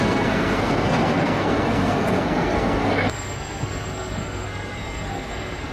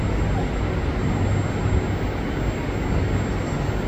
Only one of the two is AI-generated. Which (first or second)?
first